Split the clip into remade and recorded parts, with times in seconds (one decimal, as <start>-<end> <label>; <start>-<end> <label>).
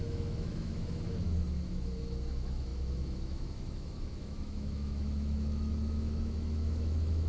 0.0-7.3 remade